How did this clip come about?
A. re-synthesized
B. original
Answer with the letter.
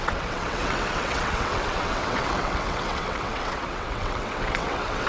A